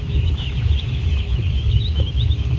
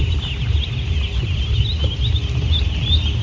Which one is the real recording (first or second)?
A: second